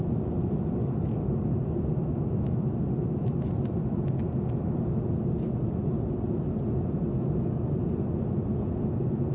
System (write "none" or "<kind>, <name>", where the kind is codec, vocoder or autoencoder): none